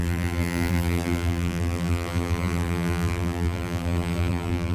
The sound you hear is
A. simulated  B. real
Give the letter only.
A